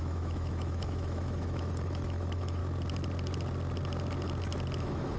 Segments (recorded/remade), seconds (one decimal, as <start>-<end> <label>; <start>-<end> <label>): 0.0-2.6 remade; 2.6-4.8 recorded; 4.8-5.2 remade

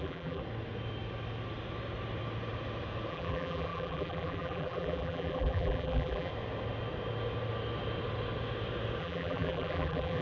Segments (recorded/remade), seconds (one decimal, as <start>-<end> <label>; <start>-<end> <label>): 0.0-0.4 remade; 0.4-3.1 recorded; 3.1-6.3 remade; 6.3-9.0 recorded; 9.0-10.2 remade

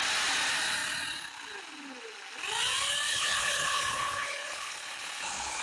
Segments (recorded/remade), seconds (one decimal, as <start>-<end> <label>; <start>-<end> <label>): 0.0-3.1 recorded; 3.1-5.6 remade

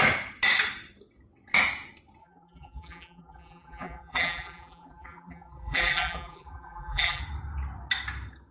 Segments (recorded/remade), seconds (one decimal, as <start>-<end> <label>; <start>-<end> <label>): 0.0-2.2 recorded; 2.2-7.2 remade; 7.2-8.5 recorded